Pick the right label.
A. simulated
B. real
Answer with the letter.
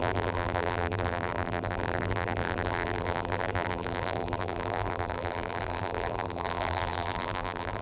A